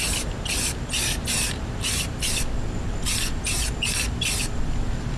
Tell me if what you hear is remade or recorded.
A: recorded